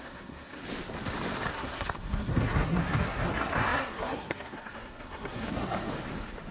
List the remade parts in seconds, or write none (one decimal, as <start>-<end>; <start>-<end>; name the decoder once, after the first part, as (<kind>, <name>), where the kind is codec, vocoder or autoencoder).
0.0-0.6 (codec, SNAC); 1.5-5.9